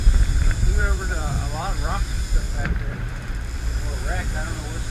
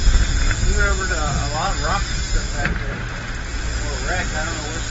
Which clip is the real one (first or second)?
second